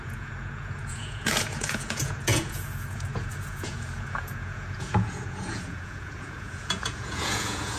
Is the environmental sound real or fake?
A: fake